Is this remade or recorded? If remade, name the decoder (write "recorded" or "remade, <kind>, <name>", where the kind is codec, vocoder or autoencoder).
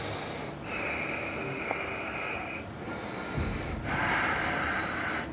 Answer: recorded